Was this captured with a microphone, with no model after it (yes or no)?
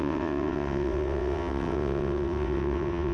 no